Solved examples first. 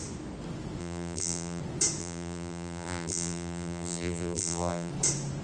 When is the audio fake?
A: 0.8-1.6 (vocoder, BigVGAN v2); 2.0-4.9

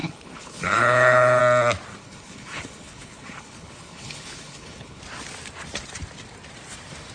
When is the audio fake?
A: 0.0-1.4 (codec, HILCodec); 1.9-5.0

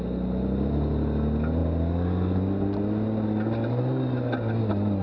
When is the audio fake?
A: none

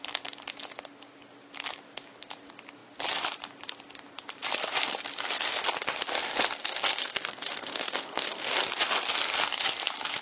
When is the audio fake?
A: 6.6-8.5 (codec, SNAC)

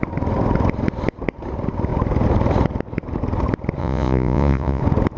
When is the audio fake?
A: 3.8-4.8 (vocoder, Vocos)

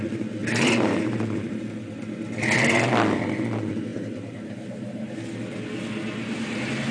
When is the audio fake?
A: 0.4-1.6 (vocoder, BigVGAN v2); 3.9-5.1

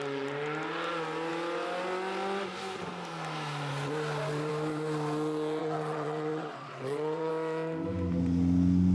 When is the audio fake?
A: 5.6-7.3 (vocoder, WaveNeXt)